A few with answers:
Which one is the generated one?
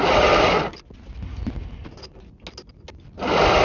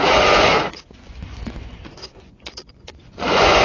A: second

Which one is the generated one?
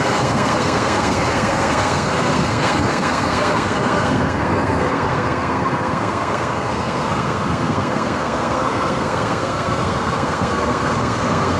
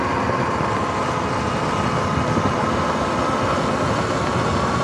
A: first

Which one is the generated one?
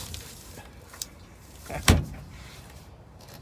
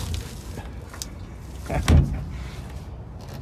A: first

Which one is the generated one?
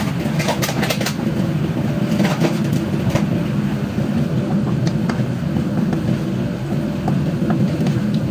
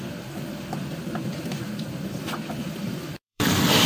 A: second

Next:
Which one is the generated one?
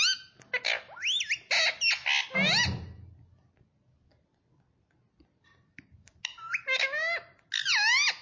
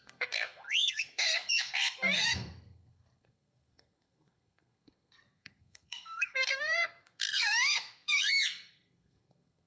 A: second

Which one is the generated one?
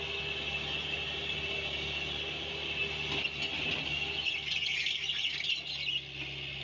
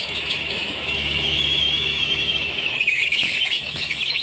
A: second